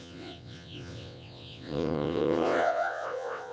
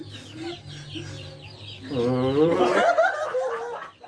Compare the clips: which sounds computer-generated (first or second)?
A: first